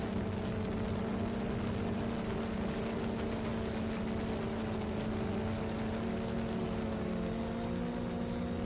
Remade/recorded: recorded